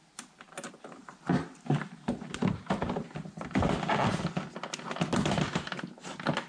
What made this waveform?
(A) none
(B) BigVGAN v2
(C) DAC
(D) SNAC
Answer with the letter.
A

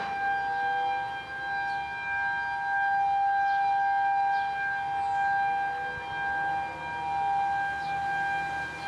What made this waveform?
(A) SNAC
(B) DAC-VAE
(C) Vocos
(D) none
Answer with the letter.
D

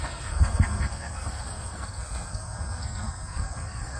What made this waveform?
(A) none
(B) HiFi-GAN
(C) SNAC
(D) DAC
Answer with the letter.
C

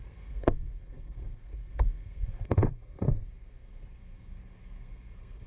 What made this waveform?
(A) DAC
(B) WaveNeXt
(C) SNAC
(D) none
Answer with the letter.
C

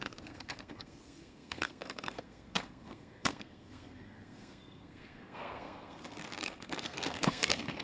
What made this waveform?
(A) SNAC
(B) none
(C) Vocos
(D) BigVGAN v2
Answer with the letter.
A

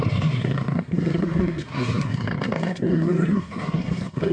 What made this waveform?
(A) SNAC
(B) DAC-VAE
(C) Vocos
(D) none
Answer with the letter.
A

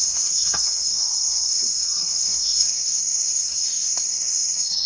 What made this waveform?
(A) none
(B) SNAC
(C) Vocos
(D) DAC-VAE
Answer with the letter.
B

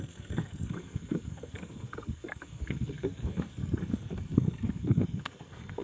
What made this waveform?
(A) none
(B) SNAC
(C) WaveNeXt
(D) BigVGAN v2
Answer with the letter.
B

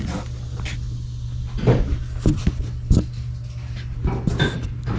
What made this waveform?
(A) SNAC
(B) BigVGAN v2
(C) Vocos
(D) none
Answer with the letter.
D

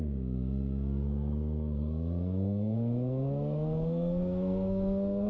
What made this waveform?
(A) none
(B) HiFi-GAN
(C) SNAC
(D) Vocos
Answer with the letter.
C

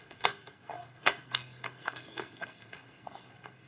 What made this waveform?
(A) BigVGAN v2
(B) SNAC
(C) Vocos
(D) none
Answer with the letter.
B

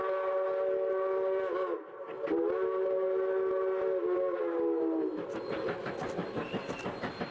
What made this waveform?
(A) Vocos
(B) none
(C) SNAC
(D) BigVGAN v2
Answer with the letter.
B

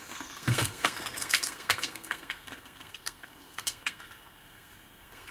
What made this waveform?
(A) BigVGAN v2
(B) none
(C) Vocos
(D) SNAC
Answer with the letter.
D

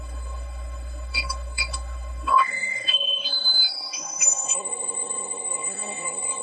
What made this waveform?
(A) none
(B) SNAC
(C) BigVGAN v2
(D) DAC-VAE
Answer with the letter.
B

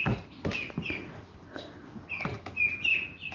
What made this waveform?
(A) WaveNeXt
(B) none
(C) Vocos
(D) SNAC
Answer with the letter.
B